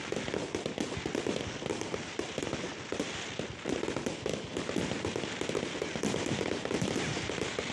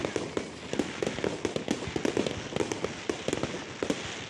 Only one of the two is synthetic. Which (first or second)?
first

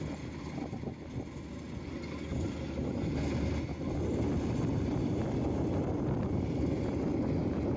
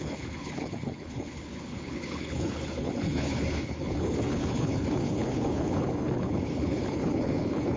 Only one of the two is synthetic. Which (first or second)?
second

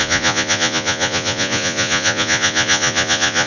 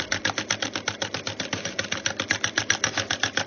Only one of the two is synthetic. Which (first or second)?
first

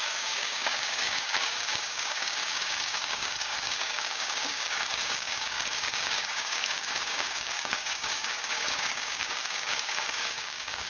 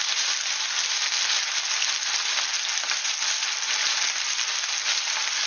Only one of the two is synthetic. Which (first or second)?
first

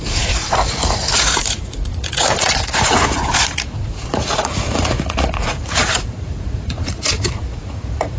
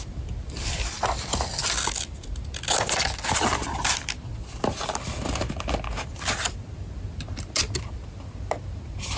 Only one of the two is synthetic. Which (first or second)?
first